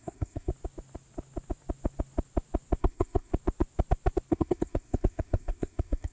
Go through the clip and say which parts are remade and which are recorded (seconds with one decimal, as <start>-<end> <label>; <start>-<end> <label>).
0.0-0.5 remade; 0.5-2.8 recorded; 2.8-3.3 remade; 3.3-4.3 recorded; 4.3-6.1 remade